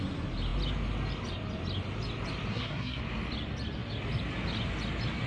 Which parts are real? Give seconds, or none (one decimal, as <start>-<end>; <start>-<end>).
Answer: 0.0-2.5; 3.0-5.3